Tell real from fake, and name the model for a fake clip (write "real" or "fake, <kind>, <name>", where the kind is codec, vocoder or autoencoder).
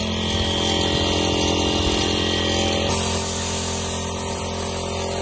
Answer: real